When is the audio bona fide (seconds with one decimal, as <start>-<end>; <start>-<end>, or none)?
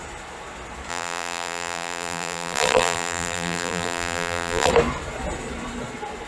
0.0-0.9; 4.7-6.3